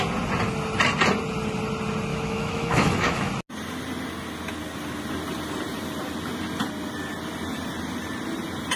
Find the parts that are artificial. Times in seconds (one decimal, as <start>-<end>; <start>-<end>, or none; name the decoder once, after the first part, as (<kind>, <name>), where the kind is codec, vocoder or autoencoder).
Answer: 2.1-3.3 (autoencoder, DAC-VAE)